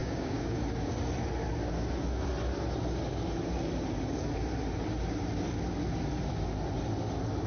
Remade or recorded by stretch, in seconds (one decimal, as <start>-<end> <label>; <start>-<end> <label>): 0.0-0.6 remade; 0.6-7.5 recorded